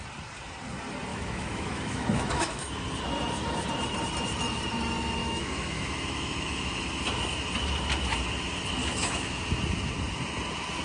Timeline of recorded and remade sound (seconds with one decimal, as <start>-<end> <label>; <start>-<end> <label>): 0.0-1.1 recorded; 1.1-2.7 remade; 2.7-5.2 recorded; 5.2-6.8 remade; 6.8-8.8 recorded; 8.8-9.4 remade; 9.4-10.8 recorded